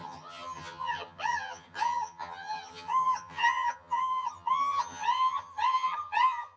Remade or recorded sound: remade